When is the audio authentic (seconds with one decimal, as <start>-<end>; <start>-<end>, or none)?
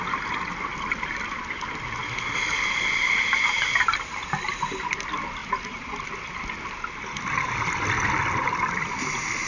0.0-9.5